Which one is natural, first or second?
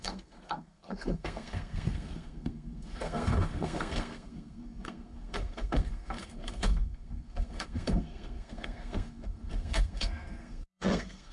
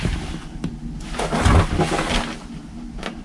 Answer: second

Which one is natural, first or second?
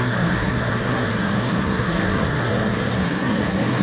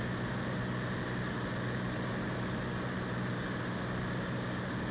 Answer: second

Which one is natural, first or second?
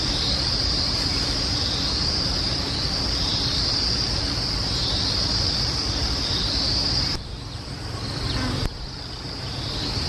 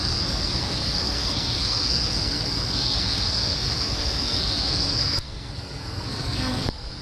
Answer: first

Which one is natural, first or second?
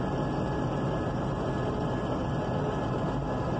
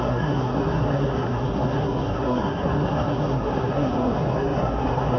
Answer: first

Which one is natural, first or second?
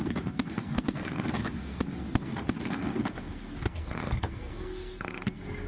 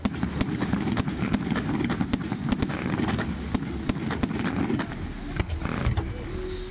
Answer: second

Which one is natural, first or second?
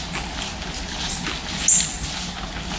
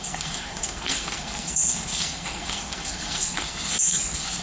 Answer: first